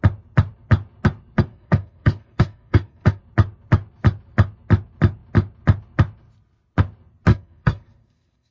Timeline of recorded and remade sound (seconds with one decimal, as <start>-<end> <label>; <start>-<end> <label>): 0.0-1.5 recorded; 1.5-3.2 remade; 3.2-7.3 recorded; 7.3-8.5 remade